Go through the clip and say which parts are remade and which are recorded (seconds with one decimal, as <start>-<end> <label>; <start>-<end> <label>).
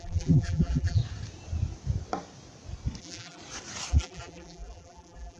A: 0.0-1.0 remade; 1.0-3.0 recorded; 3.0-3.4 remade; 3.4-3.9 recorded; 3.9-5.4 remade